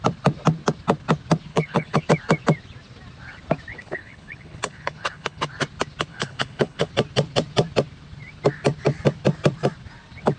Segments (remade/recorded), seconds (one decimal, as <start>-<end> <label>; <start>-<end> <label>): 0.0-1.5 recorded; 1.5-2.0 remade; 2.0-3.7 recorded; 3.7-5.4 remade; 5.4-6.1 recorded; 6.1-6.9 remade; 6.9-10.4 recorded